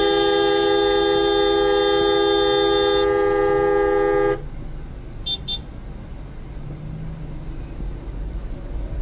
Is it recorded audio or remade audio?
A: recorded